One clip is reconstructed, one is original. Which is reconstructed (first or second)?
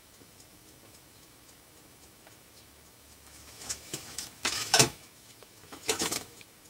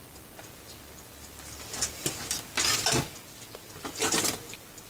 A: first